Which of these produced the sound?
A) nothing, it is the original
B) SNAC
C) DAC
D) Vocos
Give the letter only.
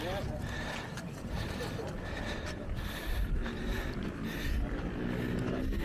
A